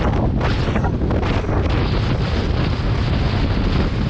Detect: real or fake real